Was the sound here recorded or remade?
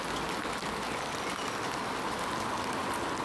recorded